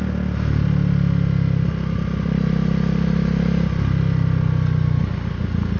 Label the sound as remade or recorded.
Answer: recorded